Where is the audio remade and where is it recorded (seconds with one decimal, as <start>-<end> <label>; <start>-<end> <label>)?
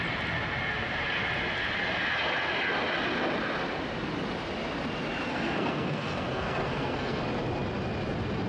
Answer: 0.0-5.3 recorded; 5.3-7.2 remade; 7.2-8.5 recorded